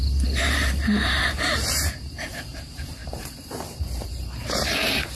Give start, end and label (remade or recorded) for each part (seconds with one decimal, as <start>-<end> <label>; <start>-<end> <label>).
0.0-5.1 remade